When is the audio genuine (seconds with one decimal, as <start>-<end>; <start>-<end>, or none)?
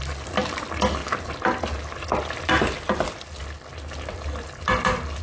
0.0-5.2